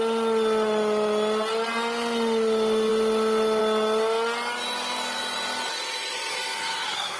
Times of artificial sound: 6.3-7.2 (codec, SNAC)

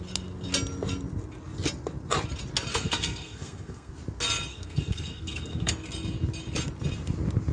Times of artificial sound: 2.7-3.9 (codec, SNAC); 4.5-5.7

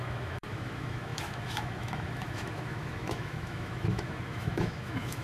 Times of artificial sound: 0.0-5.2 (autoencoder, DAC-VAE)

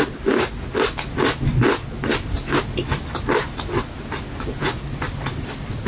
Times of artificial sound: none